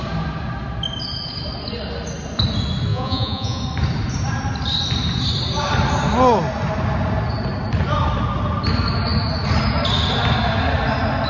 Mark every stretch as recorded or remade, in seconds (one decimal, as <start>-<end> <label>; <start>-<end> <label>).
0.0-2.9 recorded; 2.9-3.6 remade; 3.6-11.3 recorded

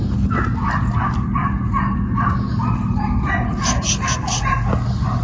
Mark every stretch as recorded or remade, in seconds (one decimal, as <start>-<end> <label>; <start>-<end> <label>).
0.0-5.2 recorded

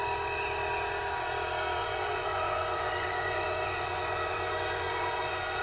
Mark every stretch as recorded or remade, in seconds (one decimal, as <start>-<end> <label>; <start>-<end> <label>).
0.0-1.8 recorded; 1.8-5.6 remade

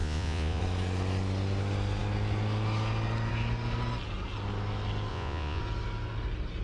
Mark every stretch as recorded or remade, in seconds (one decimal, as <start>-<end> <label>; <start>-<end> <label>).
0.0-0.6 remade; 0.6-5.1 recorded; 5.1-5.6 remade; 5.6-6.6 recorded

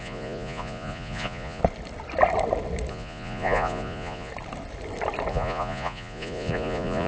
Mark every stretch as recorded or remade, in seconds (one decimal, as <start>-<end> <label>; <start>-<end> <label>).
0.0-1.6 remade; 1.6-2.9 recorded; 2.9-4.3 remade; 4.3-5.3 recorded; 5.3-7.1 remade

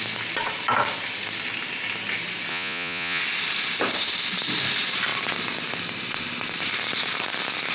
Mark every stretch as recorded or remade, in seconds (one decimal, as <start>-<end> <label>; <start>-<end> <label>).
0.0-2.5 recorded; 2.5-3.2 remade; 3.2-7.7 recorded